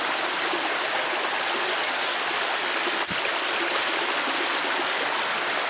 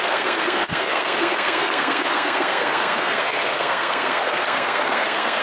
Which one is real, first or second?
first